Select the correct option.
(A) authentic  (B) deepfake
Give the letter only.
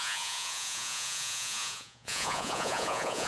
B